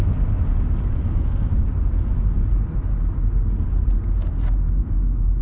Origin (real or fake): real